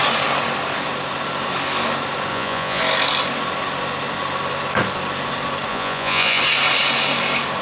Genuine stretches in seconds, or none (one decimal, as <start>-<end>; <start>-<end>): 0.0-2.3; 2.8-5.7; 6.4-7.6